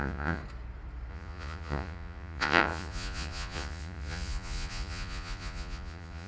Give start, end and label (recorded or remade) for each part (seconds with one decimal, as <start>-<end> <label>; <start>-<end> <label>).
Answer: 0.0-0.4 remade; 0.4-1.1 recorded; 1.1-6.3 remade